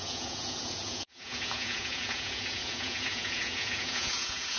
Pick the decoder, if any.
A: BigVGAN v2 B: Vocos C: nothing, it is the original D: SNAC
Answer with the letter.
B